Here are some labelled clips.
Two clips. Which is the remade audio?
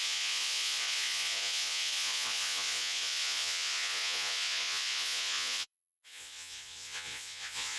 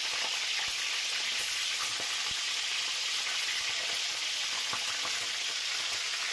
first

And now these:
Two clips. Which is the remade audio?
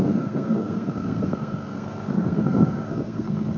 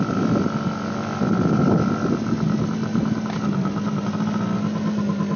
first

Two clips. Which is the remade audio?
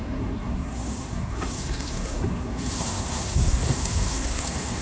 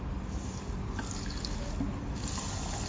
first